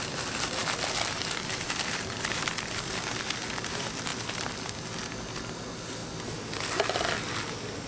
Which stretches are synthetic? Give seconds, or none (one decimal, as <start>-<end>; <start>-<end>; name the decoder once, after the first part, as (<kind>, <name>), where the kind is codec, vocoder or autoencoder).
none